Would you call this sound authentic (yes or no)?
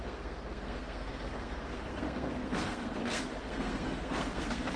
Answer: no